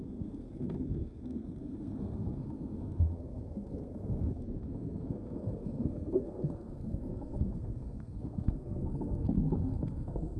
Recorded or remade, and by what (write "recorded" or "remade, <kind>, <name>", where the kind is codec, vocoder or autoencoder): remade, codec, SNAC